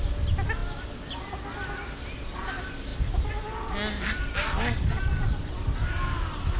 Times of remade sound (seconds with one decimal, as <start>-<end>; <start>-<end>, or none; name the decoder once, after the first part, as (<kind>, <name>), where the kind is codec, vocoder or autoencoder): none